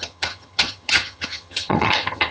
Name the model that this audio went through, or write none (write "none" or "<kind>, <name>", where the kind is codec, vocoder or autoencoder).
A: vocoder, HiFi-GAN